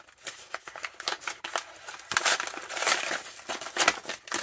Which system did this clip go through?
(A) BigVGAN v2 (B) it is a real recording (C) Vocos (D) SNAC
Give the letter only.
B